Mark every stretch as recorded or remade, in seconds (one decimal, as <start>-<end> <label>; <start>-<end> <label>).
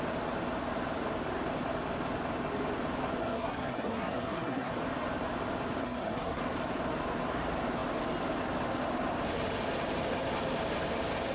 0.0-3.2 recorded; 3.2-4.7 remade; 4.7-5.8 recorded; 5.8-6.4 remade; 6.4-11.3 recorded